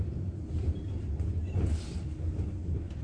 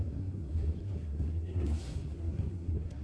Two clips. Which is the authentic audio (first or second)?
first